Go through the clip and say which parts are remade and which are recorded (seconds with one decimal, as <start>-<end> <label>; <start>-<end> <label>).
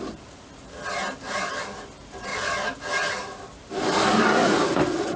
0.0-4.4 recorded; 4.4-5.2 remade